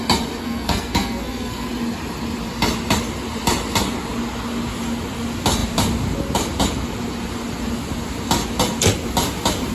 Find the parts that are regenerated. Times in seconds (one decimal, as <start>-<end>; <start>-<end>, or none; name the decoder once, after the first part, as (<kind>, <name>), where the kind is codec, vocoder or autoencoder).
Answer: 0.4-1.7 (codec, SNAC)